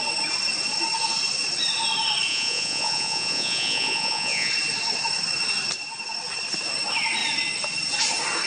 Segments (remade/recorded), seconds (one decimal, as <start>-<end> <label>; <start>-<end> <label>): 0.0-2.3 recorded; 2.3-4.5 remade; 4.5-8.5 recorded